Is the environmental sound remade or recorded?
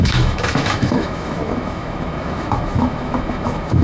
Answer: remade